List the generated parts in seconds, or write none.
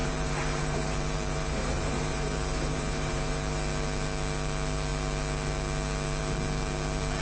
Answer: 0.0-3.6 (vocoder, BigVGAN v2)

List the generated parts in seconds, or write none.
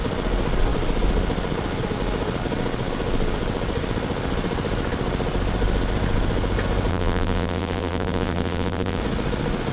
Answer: 6.9-9.0 (vocoder, BigVGAN v2)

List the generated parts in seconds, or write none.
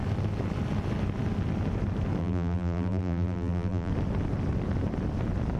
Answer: 2.2-3.9 (vocoder, BigVGAN v2)